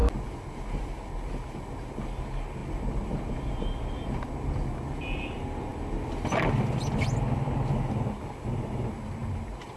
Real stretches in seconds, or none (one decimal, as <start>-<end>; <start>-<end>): 0.0-9.8